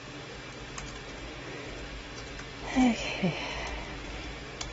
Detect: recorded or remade recorded